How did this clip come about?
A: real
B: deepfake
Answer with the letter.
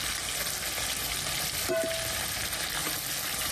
A